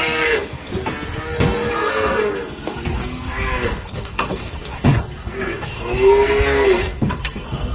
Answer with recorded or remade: remade